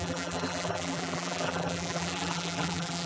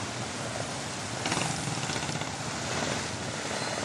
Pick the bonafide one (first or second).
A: second